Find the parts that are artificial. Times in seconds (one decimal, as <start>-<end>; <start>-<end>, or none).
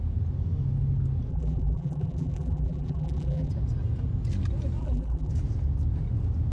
1.3-3.5; 4.8-5.3